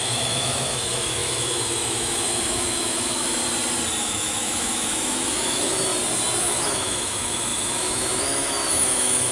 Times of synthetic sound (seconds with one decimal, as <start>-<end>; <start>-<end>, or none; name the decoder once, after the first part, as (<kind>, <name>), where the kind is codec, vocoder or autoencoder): 0.0-3.4 (autoencoder, DAC-VAE); 4.0-5.9; 6.4-9.3